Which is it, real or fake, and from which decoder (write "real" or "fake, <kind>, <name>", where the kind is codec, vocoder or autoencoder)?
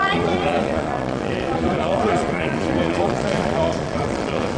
fake, vocoder, Vocos